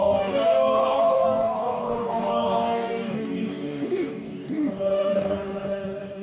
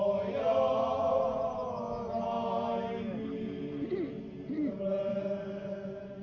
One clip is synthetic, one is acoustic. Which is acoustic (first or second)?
second